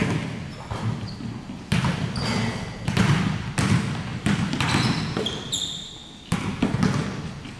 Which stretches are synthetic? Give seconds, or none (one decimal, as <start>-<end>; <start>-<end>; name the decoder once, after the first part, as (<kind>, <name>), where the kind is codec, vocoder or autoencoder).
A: 4.1-5.9 (vocoder, BigVGAN v2)